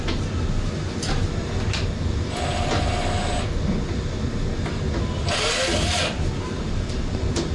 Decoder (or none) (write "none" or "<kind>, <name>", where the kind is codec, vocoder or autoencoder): none